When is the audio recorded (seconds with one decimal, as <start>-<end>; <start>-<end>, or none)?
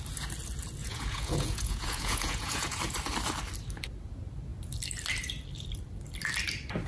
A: 0.0-0.8; 2.8-6.9